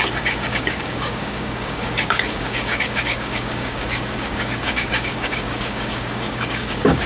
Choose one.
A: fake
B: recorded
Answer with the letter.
A